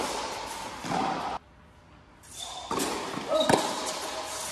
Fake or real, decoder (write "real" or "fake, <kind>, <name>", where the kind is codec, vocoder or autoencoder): real